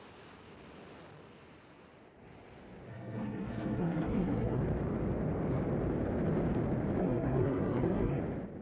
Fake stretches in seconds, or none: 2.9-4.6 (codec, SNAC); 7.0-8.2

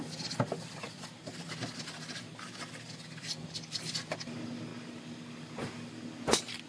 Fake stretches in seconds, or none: none